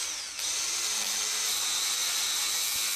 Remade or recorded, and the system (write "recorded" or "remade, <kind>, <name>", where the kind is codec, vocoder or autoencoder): recorded